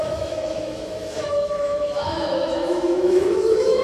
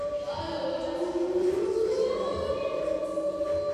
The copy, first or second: first